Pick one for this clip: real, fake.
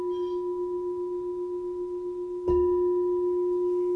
real